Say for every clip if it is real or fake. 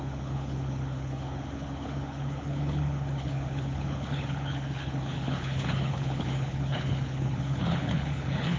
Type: fake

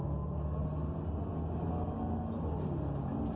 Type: real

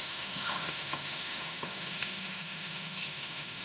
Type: fake